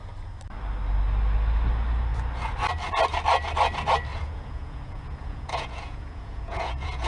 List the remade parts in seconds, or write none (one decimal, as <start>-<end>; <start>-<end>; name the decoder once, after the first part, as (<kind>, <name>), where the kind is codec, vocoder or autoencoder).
4.1-7.1 (vocoder, Vocos)